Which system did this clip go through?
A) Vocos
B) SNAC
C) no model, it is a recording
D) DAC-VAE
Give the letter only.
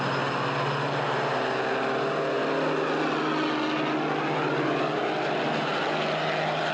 C